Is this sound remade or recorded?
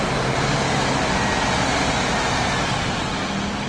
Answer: recorded